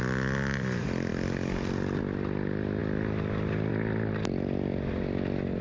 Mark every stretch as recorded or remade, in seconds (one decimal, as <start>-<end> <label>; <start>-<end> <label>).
0.0-5.6 recorded